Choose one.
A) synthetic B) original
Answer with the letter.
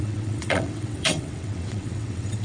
A